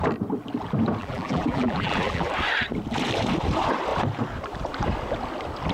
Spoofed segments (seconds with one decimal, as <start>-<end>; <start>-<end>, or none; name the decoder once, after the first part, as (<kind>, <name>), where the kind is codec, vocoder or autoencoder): 1.0-2.3 (vocoder, BigVGAN v2)